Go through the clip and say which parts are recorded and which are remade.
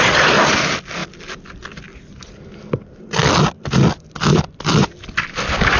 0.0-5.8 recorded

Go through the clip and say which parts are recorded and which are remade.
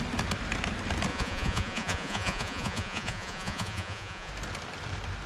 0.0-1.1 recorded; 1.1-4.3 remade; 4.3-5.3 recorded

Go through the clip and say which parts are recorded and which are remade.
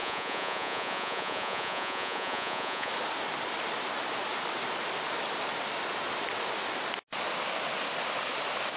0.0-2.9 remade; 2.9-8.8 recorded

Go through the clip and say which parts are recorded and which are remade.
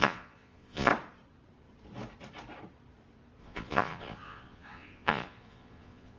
0.0-0.9 remade; 0.9-3.4 recorded; 3.4-6.2 remade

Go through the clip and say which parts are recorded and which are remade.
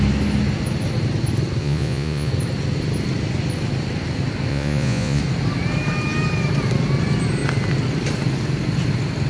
0.0-1.6 recorded; 1.6-2.3 remade; 2.3-4.5 recorded; 4.5-5.2 remade; 5.2-9.3 recorded